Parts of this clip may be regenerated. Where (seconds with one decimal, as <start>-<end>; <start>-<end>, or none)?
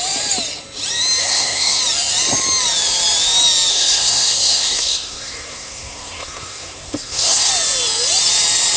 1.2-1.8; 3.7-7.5